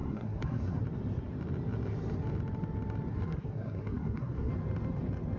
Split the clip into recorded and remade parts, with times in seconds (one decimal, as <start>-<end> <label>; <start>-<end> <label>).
0.0-0.8 remade; 0.8-3.1 recorded; 3.1-4.5 remade; 4.5-5.4 recorded